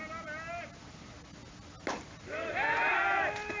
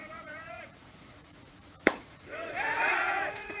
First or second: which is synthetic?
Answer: second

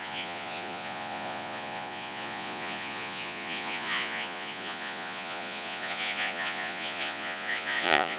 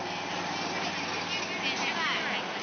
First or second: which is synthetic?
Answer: first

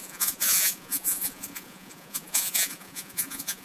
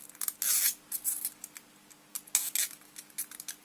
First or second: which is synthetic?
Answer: first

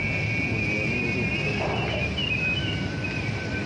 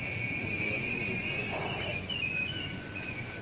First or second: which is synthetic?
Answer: second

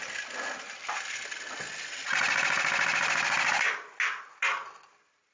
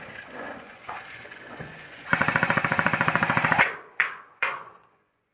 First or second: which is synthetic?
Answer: second